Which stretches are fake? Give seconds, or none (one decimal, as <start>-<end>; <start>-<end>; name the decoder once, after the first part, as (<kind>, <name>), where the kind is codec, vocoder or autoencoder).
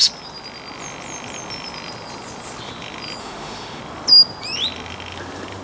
3.2-3.8 (autoencoder, DAC-VAE)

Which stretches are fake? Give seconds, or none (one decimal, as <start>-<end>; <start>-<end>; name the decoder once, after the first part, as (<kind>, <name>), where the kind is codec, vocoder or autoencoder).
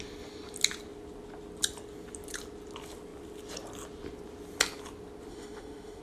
5.3-6.0 (autoencoder, DAC-VAE)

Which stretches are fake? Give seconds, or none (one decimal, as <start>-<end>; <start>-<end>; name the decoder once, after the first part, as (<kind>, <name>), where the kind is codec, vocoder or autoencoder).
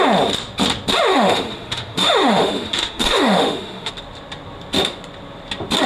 1.1-3.9 (autoencoder, DAC-VAE)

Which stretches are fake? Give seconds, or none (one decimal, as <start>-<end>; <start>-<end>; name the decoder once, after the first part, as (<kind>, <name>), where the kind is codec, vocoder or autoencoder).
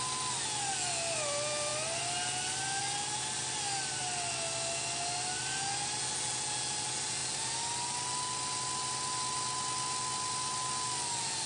none